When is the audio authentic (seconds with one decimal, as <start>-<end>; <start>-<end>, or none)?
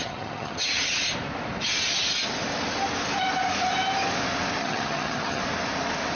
0.8-4.6; 5.4-6.2